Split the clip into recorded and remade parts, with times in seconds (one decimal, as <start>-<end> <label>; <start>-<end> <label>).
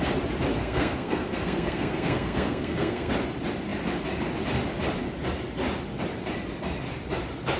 0.0-0.6 recorded; 0.6-3.1 remade; 3.1-7.6 recorded